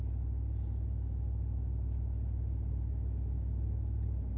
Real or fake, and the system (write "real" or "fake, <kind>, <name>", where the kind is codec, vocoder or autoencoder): real